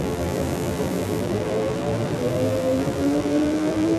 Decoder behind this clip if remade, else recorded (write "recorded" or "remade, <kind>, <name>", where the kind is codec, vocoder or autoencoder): remade, vocoder, BigVGAN v2